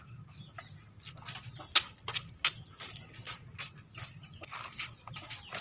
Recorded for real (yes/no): yes